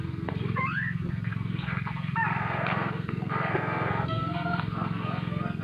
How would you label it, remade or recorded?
remade